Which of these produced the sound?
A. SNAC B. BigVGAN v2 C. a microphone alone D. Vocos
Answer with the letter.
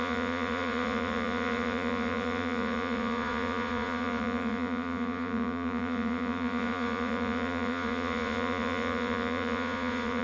D